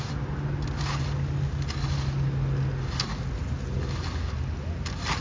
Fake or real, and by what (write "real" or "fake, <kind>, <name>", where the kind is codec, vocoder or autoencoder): real